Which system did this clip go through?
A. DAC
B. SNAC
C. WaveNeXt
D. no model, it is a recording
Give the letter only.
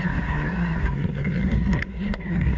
B